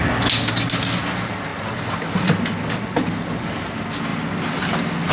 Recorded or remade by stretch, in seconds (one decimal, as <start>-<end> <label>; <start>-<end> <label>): 0.0-5.1 recorded